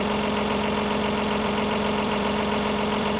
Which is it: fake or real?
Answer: fake